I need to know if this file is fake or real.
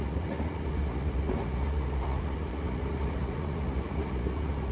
fake